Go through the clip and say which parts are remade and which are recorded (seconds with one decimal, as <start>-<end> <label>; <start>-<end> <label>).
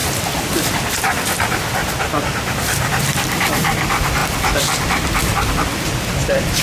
0.0-2.6 recorded; 2.6-6.6 remade